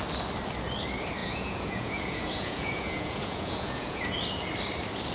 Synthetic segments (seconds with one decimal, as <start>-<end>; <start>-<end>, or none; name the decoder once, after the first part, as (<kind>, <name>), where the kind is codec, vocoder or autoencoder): 1.2-4.1 (vocoder, Vocos)